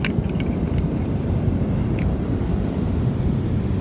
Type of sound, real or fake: real